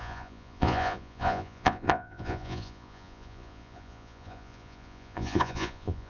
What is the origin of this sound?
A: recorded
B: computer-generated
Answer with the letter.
B